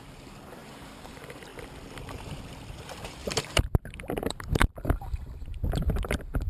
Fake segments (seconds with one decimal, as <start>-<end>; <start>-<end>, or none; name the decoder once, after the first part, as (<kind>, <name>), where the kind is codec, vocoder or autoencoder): 0.0-1.5 (vocoder, BigVGAN v2); 2.5-6.5

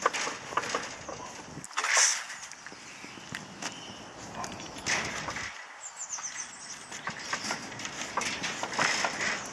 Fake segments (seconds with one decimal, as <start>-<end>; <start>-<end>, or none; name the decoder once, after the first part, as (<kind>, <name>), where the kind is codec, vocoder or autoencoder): none

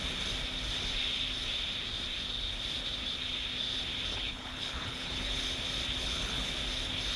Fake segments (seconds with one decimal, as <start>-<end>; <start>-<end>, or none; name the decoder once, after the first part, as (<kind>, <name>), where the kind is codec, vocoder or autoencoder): 4.1-5.4 (codec, HILCodec); 6.0-6.5

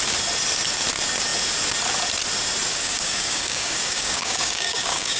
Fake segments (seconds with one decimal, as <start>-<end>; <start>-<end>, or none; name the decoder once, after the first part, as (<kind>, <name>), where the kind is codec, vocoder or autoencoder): 2.7-5.2 (codec, DAC)